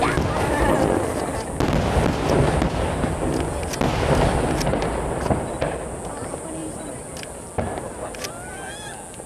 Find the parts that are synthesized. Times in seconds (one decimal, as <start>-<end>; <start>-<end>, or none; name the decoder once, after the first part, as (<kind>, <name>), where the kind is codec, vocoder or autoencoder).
6.6-7.1 (vocoder, BigVGAN v2)